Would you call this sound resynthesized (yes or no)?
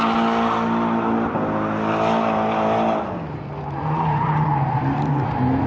no